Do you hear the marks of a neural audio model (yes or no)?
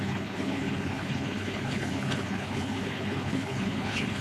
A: yes